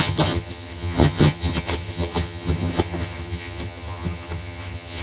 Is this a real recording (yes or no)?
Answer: no